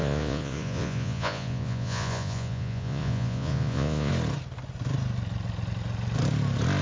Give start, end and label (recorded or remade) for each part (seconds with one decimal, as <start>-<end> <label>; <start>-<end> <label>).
0.0-4.1 remade; 4.1-6.8 recorded